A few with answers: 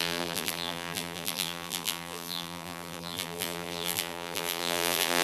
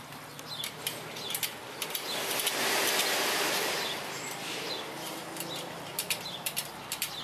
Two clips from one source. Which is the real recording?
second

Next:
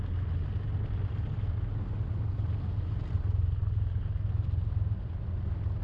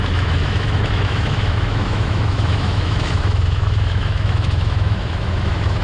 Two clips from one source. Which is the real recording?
first